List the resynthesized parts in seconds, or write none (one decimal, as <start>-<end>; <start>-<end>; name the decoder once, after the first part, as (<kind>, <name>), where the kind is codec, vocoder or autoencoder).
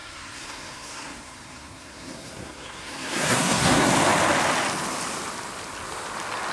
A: 0.0-3.9 (codec, SNAC)